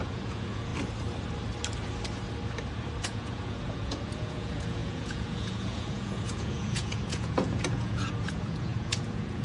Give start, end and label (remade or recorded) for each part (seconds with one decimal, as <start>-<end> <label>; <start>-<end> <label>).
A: 0.0-0.7 remade; 0.7-3.0 recorded; 3.0-9.4 remade